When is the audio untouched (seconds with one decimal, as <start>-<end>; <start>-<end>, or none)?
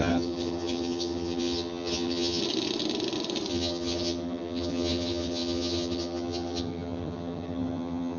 2.4-3.5